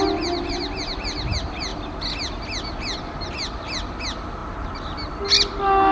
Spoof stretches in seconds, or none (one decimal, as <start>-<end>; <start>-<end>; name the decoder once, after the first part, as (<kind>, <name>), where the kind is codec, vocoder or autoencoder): none